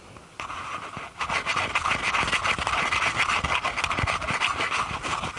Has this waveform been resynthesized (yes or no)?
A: no